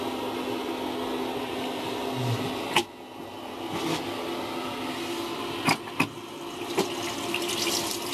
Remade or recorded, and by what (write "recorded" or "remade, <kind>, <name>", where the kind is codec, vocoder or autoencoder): recorded